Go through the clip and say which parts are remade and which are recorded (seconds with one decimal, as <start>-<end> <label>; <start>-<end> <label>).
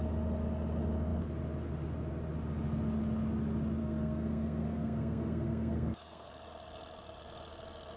0.0-3.8 recorded; 3.8-6.3 remade; 6.3-8.0 recorded